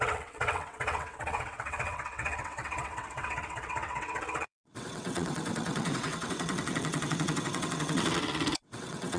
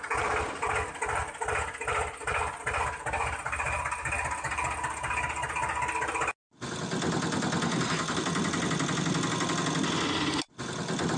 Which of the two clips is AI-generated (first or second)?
first